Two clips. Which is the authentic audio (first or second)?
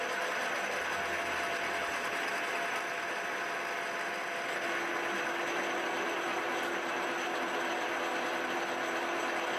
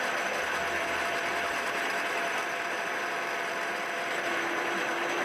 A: first